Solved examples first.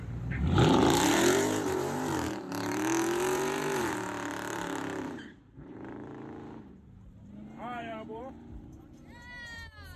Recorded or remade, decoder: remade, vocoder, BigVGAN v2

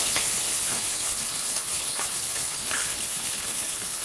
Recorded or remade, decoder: remade, codec, HILCodec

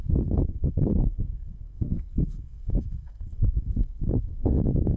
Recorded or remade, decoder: remade, codec, SNAC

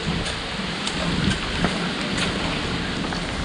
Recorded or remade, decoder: recorded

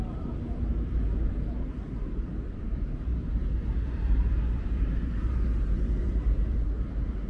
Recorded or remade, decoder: remade, vocoder, BigVGAN v2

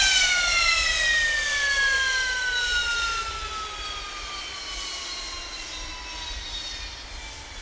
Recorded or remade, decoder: recorded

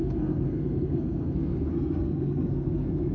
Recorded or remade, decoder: remade, codec, SNAC